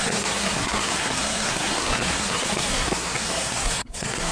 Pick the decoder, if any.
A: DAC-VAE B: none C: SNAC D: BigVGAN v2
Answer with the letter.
C